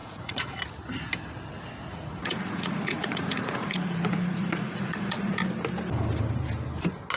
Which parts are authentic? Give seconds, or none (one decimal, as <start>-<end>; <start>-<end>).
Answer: 0.6-1.8; 5.4-7.2